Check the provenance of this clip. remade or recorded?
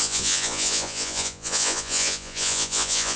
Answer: remade